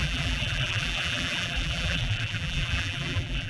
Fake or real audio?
fake